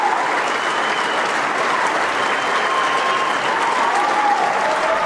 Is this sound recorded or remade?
recorded